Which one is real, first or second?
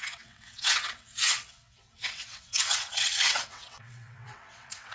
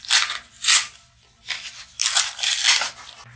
second